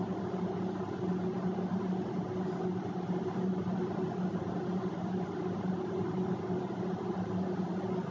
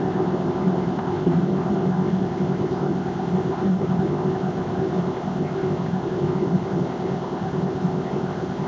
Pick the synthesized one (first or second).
second